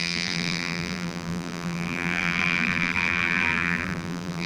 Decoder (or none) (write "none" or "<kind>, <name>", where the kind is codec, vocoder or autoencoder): vocoder, BigVGAN v2